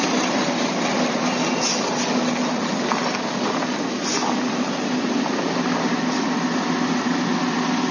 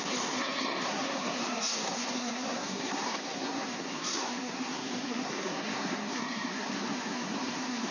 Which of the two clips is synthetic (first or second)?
second